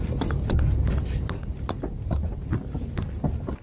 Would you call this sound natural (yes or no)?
yes